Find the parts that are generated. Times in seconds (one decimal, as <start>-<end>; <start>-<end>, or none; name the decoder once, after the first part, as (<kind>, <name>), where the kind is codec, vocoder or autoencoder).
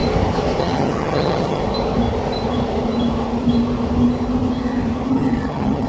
0.6-1.6 (vocoder, HiFi-GAN); 5.1-5.9